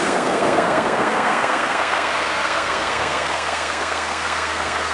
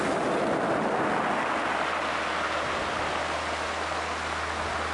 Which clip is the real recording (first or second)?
second